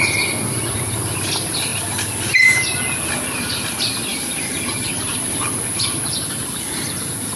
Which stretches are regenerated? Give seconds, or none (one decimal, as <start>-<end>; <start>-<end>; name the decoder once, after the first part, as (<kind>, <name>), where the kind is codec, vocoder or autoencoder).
0.0-1.7 (vocoder, BigVGAN v2); 3.0-7.4